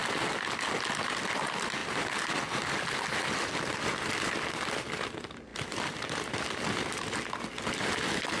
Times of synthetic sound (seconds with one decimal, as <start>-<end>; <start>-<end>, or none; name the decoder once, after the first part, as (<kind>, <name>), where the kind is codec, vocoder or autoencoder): none